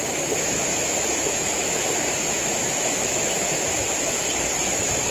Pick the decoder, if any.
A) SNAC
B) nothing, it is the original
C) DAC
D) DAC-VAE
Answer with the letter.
D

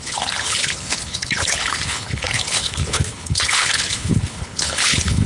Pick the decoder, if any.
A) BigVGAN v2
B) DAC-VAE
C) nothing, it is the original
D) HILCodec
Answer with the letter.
D